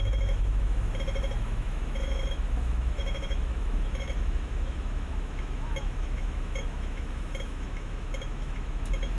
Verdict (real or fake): fake